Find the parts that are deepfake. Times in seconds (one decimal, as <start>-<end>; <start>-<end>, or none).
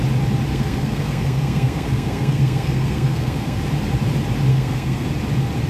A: 0.5-3.6; 4.5-5.1